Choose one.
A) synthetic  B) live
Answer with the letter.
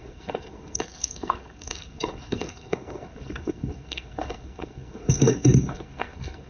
A